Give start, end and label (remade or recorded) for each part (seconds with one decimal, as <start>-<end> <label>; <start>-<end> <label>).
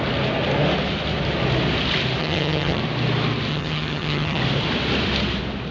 0.0-2.2 recorded; 2.2-2.8 remade; 2.8-3.5 recorded; 3.5-4.4 remade; 4.4-5.7 recorded